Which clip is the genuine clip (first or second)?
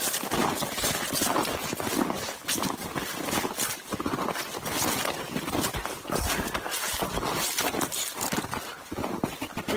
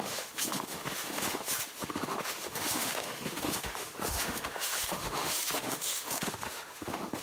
first